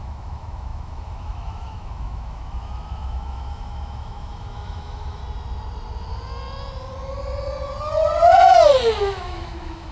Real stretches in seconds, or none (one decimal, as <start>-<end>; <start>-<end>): 5.2-9.0